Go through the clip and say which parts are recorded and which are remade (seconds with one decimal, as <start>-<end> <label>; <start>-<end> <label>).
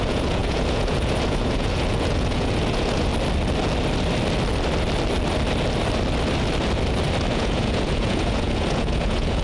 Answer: 0.0-3.1 remade; 3.1-7.3 recorded; 7.3-9.4 remade